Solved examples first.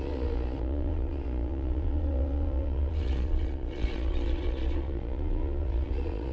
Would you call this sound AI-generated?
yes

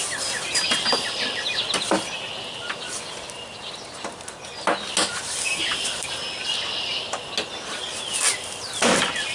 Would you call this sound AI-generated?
no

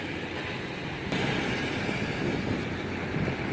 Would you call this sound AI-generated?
no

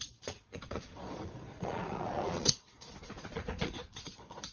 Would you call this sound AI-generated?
yes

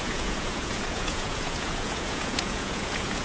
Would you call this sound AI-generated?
yes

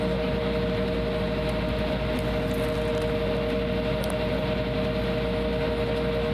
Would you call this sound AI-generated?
no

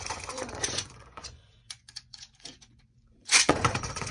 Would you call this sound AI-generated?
yes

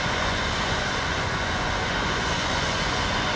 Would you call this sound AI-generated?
yes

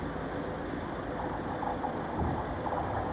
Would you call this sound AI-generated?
no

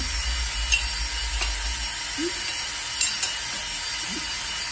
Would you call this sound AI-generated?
no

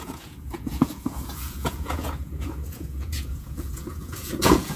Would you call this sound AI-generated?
yes